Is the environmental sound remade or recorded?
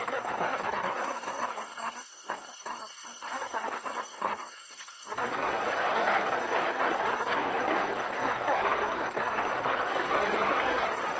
remade